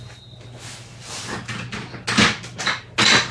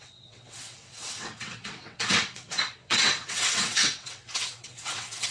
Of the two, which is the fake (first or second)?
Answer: second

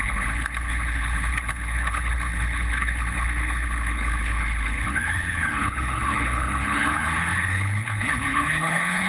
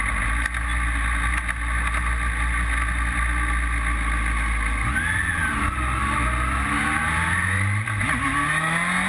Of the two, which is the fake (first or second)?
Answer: first